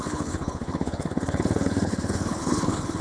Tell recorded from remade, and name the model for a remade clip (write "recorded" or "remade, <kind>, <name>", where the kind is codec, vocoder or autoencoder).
remade, codec, HILCodec